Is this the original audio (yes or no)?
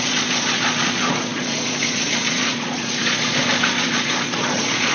no